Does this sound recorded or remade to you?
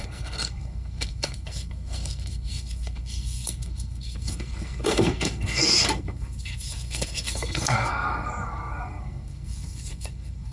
remade